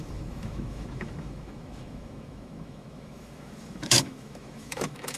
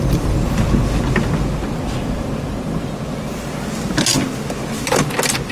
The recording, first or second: second